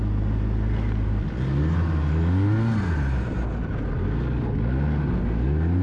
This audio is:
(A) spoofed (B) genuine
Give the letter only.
B